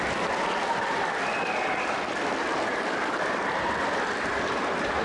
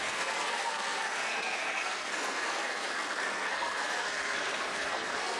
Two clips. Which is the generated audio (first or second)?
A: second